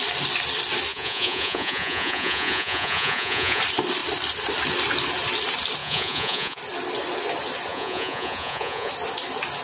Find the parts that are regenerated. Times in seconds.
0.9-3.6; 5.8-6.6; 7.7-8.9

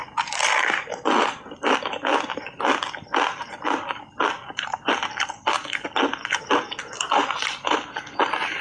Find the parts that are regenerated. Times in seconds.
none

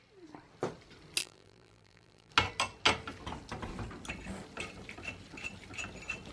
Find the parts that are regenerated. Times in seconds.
1.2-2.3

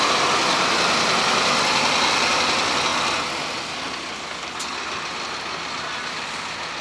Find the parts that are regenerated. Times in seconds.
none